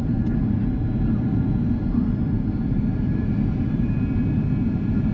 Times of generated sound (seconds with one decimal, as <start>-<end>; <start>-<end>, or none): none